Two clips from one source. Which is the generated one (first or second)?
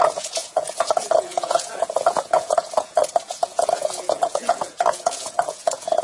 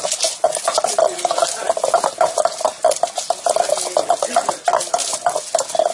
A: first